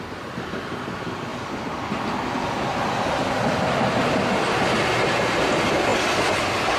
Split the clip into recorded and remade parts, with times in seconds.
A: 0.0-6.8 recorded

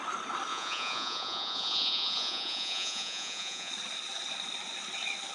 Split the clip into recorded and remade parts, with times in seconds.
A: 0.0-0.5 recorded; 0.5-3.7 remade; 3.7-5.3 recorded

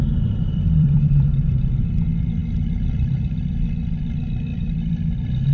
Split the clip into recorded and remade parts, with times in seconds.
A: 0.0-0.4 recorded; 0.4-1.7 remade; 1.7-2.4 recorded; 2.4-4.0 remade; 4.0-4.5 recorded; 4.5-5.5 remade

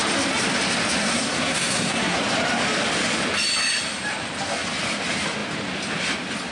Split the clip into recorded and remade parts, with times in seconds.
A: 0.0-1.0 recorded; 1.0-2.2 remade; 2.2-6.5 recorded